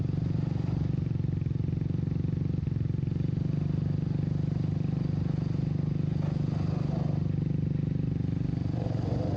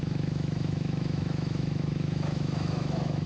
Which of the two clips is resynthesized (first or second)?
second